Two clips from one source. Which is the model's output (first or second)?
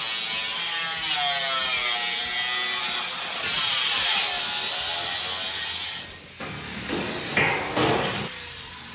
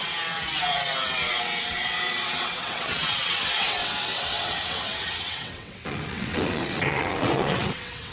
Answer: second